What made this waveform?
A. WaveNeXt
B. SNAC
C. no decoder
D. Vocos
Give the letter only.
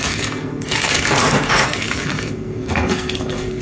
B